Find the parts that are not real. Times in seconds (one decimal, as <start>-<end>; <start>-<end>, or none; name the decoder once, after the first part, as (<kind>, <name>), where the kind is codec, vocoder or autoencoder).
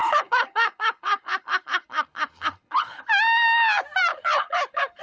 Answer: 0.0-3.0 (codec, HILCodec); 4.1-5.0